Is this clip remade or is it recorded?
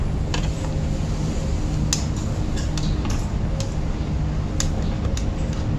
recorded